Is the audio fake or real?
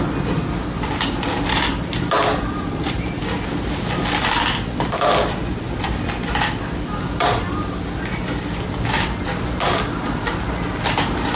real